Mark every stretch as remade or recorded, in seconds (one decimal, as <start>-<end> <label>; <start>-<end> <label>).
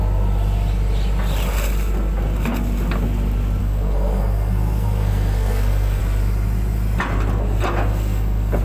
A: 0.0-3.6 recorded; 3.6-6.0 remade; 6.0-7.9 recorded; 7.9-8.6 remade